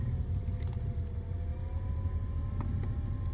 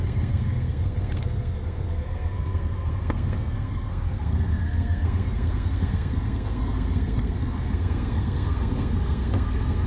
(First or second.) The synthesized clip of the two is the second